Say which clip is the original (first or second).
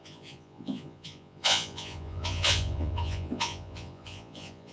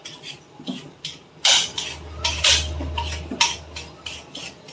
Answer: second